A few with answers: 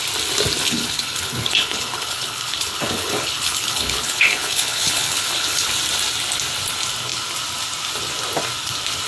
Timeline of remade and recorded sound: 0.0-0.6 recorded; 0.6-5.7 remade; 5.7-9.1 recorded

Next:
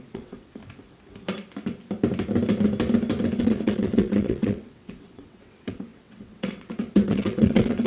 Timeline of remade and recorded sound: 0.0-0.6 remade; 0.6-3.4 recorded; 3.4-7.9 remade

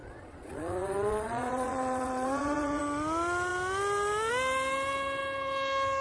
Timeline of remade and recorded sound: 0.0-2.8 remade; 2.8-6.0 recorded

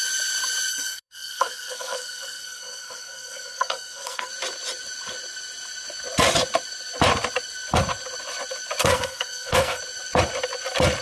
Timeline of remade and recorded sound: 0.0-0.7 recorded; 0.7-4.3 remade; 4.3-8.8 recorded; 8.8-9.8 remade; 9.8-11.0 recorded

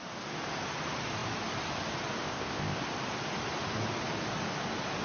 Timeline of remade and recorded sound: 0.0-2.2 recorded; 2.2-2.8 remade; 2.8-5.0 recorded

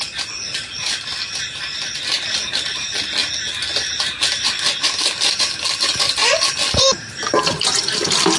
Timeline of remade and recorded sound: 0.0-8.4 recorded

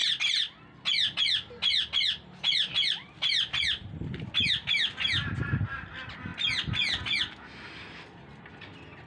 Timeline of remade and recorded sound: 0.0-9.1 recorded